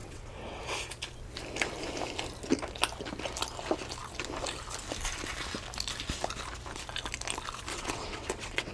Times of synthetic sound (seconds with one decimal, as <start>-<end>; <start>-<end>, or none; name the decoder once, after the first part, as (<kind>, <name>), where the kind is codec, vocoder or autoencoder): 0.0-0.6 (vocoder, WaveNeXt); 7.7-8.7